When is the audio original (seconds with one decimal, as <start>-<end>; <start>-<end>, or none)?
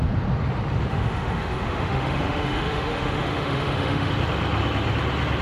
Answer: 0.0-0.9; 4.1-5.4